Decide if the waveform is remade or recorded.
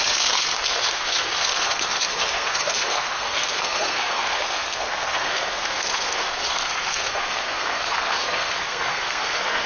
remade